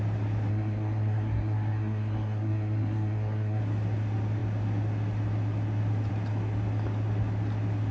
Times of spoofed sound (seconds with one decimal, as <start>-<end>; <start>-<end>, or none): 0.5-3.6